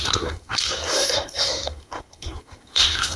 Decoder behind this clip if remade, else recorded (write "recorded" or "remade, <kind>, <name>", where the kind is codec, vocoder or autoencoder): remade, codec, SNAC